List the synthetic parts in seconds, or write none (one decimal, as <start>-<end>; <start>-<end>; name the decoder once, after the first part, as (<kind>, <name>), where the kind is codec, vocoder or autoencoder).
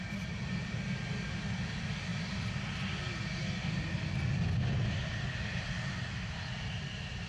none